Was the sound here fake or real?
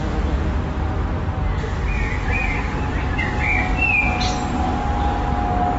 real